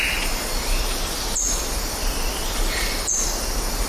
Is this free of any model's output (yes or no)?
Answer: yes